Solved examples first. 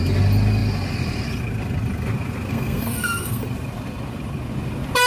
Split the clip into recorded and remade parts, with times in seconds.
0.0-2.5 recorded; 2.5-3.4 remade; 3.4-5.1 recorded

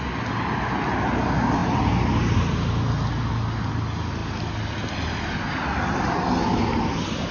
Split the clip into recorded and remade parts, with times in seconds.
0.0-7.3 recorded

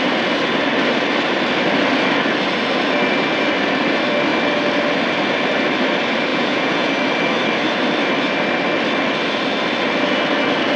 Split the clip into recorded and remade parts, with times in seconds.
0.0-6.3 recorded; 6.3-6.9 remade; 6.9-10.8 recorded

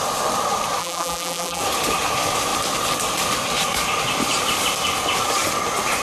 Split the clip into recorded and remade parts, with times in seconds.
0.0-0.8 recorded; 0.8-1.6 remade; 1.6-6.0 recorded